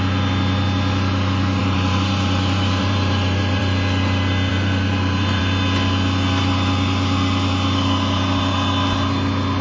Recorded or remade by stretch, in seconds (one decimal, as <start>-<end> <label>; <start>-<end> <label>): 0.0-1.6 recorded; 1.6-3.6 remade; 3.6-4.5 recorded; 4.5-5.4 remade; 5.4-9.6 recorded